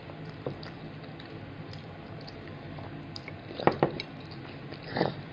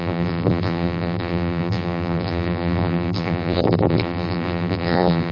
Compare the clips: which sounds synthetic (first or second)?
second